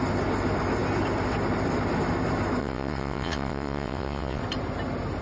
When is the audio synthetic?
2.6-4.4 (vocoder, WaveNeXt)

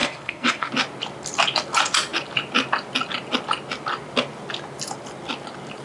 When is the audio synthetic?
0.0-0.7 (codec, SNAC)

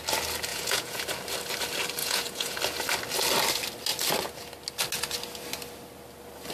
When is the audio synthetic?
0.5-1.0 (vocoder, Vocos); 2.0-2.6